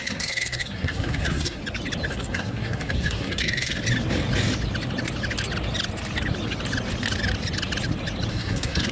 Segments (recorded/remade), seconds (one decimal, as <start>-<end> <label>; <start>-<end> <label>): 0.0-1.6 remade; 1.6-2.1 recorded; 2.1-3.8 remade; 3.8-8.3 recorded; 8.3-8.9 remade